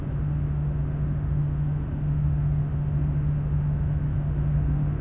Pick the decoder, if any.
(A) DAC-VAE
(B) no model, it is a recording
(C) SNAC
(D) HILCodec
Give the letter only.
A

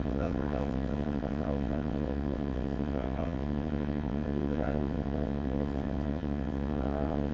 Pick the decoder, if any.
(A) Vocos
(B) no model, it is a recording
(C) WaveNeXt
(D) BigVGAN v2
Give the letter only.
C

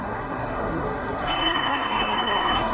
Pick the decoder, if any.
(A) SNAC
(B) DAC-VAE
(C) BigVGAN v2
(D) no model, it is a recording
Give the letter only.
A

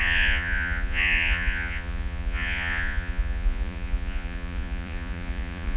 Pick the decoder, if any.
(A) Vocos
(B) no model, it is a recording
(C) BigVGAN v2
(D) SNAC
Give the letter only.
A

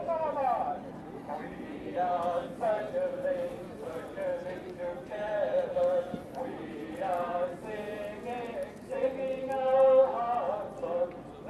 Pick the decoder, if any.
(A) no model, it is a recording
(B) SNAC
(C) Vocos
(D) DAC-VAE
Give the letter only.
A